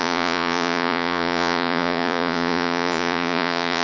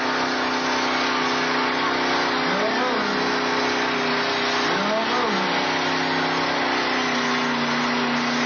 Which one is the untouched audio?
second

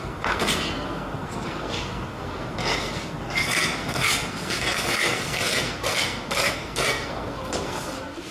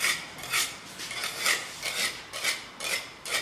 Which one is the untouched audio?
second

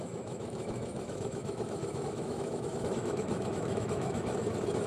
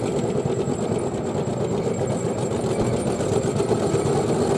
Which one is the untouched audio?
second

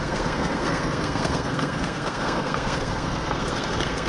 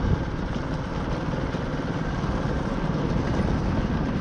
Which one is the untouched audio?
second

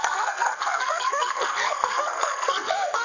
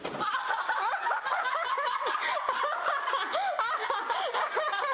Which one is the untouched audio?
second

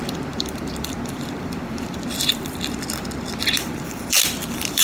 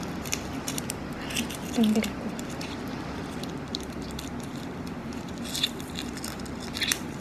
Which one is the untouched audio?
second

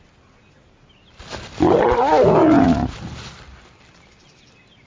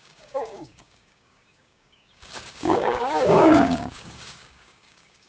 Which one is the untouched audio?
first